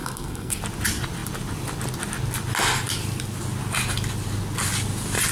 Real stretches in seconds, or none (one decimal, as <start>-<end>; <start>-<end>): 0.6-5.3